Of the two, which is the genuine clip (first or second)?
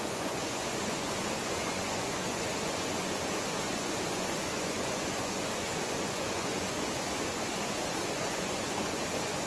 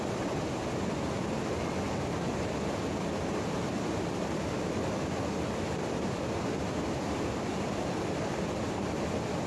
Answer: second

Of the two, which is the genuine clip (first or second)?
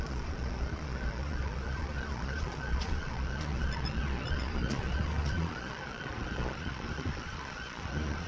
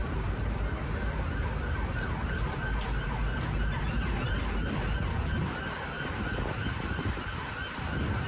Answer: second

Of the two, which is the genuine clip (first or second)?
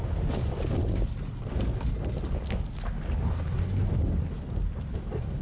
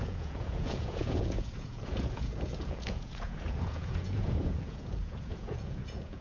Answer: first